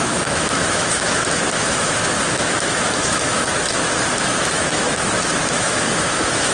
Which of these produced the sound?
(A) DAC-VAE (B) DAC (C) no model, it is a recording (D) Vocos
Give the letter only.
A